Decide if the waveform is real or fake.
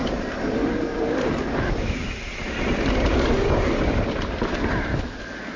real